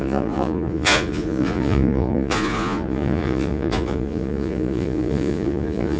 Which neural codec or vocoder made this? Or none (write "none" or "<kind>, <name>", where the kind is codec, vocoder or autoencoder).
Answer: vocoder, Vocos